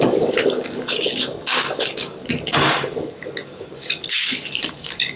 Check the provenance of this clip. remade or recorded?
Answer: remade